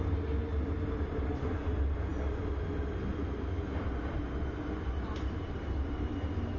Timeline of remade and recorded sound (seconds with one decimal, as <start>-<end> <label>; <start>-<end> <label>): 0.0-6.6 recorded